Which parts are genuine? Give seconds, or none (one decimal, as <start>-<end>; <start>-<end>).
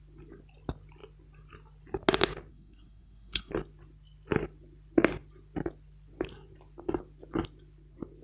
0.0-2.5; 3.5-8.2